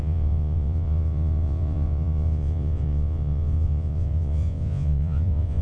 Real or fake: fake